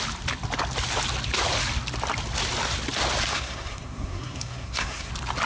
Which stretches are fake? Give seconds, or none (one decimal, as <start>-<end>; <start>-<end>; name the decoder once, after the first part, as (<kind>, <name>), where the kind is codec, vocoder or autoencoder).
3.3-5.1 (codec, SNAC)

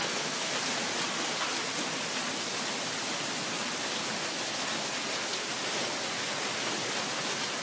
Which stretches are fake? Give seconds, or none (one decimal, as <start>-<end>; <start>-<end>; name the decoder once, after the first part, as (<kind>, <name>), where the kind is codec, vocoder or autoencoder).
0.0-0.5 (codec, SNAC)